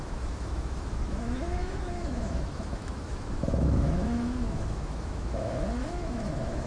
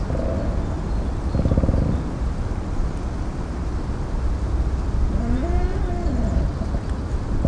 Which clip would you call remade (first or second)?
first